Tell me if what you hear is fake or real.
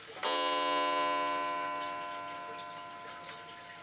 real